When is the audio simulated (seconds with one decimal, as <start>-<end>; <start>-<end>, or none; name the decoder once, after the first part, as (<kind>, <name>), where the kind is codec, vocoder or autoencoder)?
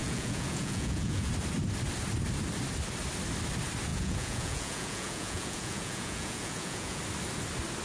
0.0-1.3 (vocoder, Vocos); 3.9-7.0